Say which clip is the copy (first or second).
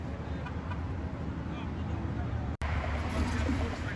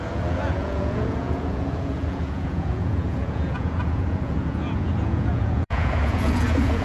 second